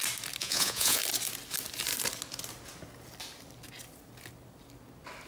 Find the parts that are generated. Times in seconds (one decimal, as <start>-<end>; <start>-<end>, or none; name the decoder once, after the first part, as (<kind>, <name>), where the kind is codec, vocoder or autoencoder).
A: 0.4-1.0 (vocoder, Vocos)